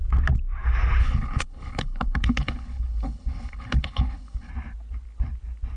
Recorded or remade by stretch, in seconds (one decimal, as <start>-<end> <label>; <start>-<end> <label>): 0.0-1.0 recorded; 1.0-4.5 remade; 4.5-5.8 recorded